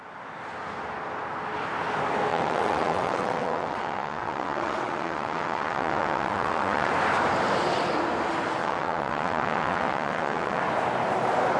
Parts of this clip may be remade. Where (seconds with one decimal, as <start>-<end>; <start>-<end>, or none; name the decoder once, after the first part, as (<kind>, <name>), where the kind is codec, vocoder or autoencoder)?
2.3-6.9 (vocoder, WaveNeXt); 8.6-10.6